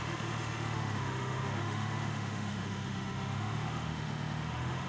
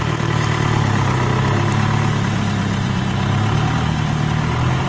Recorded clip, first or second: second